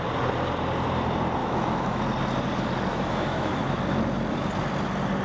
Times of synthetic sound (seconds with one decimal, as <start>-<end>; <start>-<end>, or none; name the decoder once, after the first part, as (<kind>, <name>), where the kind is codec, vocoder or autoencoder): 1.4-2.0 (autoencoder, DAC-VAE); 2.9-3.6